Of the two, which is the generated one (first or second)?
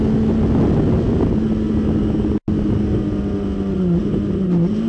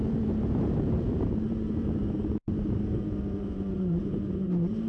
second